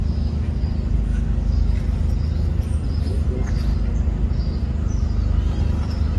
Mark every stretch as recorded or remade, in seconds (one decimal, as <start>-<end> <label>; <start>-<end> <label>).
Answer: 0.0-0.6 remade; 0.6-1.1 recorded; 1.1-1.7 remade; 1.7-6.2 recorded